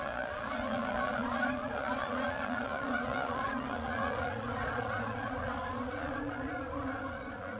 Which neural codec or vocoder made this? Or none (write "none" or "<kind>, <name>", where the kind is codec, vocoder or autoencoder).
vocoder, Vocos